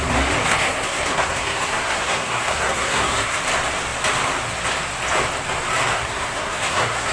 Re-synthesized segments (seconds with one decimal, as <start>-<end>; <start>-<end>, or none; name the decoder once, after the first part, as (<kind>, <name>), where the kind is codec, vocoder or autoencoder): 0.4-3.4 (codec, SNAC); 5.9-7.1